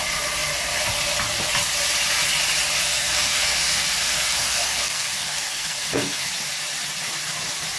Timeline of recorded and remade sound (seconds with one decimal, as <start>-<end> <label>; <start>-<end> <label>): 0.0-2.8 recorded; 2.8-6.3 remade; 6.3-7.8 recorded